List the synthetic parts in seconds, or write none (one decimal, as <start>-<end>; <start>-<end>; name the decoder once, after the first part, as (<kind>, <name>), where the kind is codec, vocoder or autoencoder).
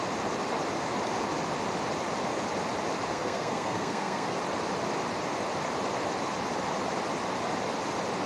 3.1-4.4 (codec, SNAC)